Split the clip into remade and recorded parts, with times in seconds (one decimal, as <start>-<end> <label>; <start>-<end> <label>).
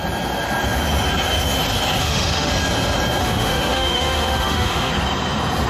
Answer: 0.0-2.0 recorded; 2.0-2.5 remade; 2.5-3.2 recorded; 3.2-4.9 remade; 4.9-5.7 recorded